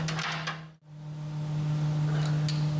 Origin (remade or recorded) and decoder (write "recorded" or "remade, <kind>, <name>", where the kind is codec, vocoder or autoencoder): recorded